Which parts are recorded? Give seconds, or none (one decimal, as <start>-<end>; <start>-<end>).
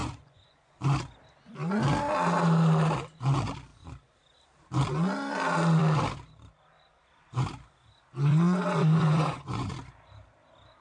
0.7-8.3; 9.7-10.8